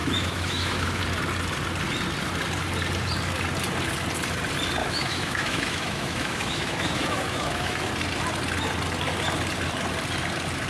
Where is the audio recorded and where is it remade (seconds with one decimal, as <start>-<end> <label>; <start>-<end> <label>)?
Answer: 0.0-1.0 remade; 1.0-4.8 recorded; 4.8-7.9 remade; 7.9-10.7 recorded